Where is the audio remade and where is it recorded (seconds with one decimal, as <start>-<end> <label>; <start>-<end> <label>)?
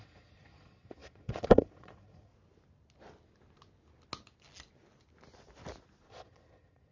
0.0-2.3 remade; 2.3-6.1 recorded; 6.1-6.9 remade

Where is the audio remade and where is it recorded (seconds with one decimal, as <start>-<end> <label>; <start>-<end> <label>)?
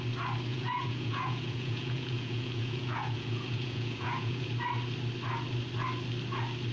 0.0-0.5 recorded; 0.5-4.5 remade; 4.5-6.7 recorded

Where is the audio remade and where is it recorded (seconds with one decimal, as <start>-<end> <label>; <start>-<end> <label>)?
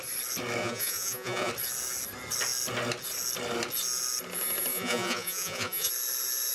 0.0-0.6 recorded; 0.6-1.5 remade; 1.5-4.7 recorded; 4.7-5.9 remade; 5.9-6.5 recorded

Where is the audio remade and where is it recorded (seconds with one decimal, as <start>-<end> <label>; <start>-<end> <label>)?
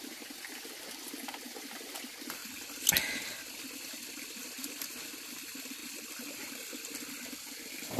0.0-8.0 recorded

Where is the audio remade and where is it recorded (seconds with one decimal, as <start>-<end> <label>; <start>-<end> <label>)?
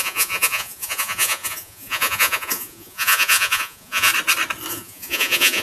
0.0-4.1 remade; 4.1-4.7 recorded; 4.7-5.6 remade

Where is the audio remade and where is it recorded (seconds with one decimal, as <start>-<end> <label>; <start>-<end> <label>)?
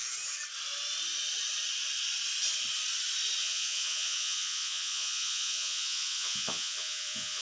0.0-3.4 recorded; 3.4-7.4 remade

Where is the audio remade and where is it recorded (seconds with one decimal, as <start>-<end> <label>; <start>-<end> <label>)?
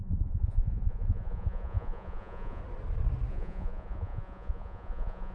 0.0-2.6 remade; 2.6-3.3 recorded; 3.3-5.3 remade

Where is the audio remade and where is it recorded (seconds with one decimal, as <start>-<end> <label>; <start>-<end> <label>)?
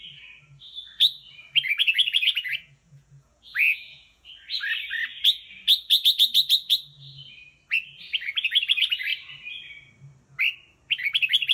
0.0-1.8 recorded; 1.8-4.3 remade; 4.3-11.5 recorded